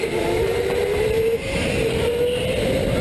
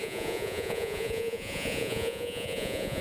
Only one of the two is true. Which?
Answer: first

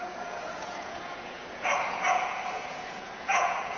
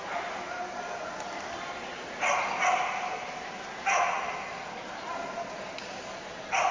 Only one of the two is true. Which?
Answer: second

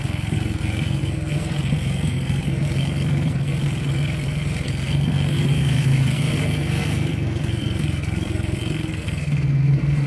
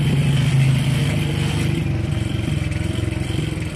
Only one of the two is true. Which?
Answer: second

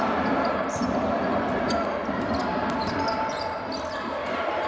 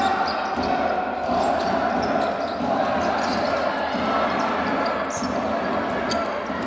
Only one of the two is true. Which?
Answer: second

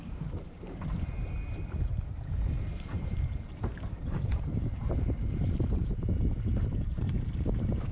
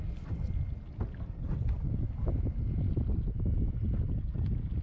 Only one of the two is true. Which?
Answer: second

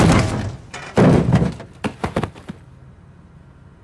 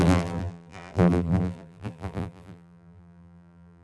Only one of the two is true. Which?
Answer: first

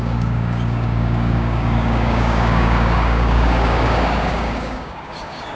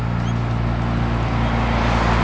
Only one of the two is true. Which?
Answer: second